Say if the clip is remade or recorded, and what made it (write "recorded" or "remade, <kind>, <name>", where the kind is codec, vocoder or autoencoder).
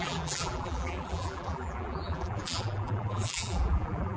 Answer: remade, vocoder, BigVGAN v2